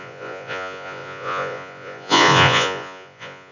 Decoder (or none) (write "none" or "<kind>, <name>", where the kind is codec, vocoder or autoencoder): vocoder, Vocos